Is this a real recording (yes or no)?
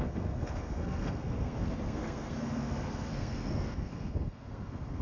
no